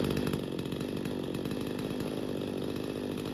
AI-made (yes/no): no